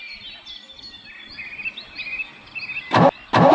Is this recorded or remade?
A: recorded